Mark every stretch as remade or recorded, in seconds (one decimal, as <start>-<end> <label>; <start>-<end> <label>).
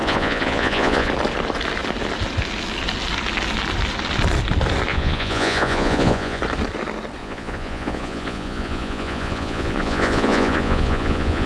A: 0.0-1.1 remade; 1.1-4.9 recorded; 4.9-6.4 remade; 6.4-7.2 recorded; 7.2-11.5 remade